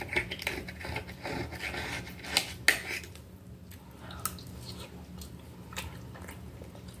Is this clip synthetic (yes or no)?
no